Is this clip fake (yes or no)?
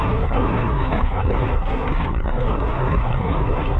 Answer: yes